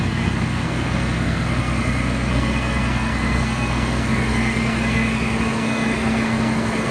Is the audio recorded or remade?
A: remade